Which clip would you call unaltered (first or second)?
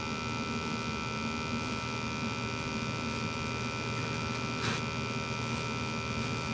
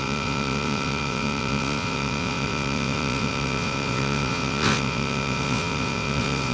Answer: first